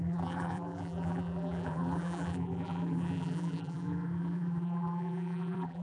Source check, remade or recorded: remade